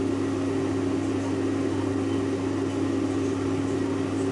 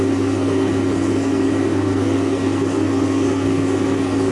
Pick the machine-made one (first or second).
second